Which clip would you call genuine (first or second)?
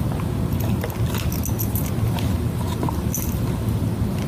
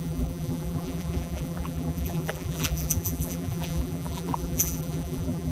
first